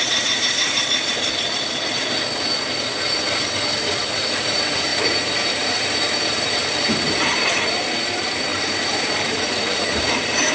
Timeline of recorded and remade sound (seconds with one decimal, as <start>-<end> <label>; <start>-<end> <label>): 0.0-0.6 remade; 0.6-4.0 recorded; 4.0-10.5 remade